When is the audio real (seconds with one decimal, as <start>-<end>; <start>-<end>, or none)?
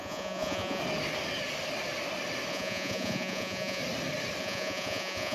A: 0.8-2.5; 3.8-4.4